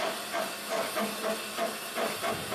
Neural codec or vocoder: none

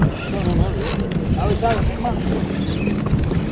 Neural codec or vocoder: none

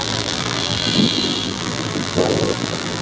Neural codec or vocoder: vocoder, BigVGAN v2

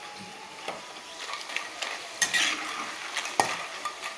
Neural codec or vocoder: none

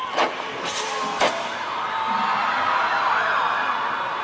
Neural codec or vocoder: none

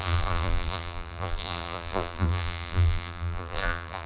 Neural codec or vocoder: vocoder, BigVGAN v2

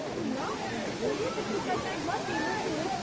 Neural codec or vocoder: none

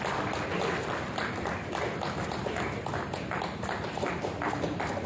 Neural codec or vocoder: none